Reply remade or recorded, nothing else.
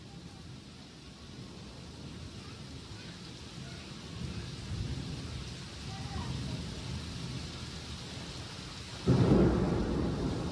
recorded